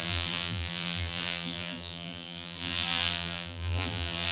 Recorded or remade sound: remade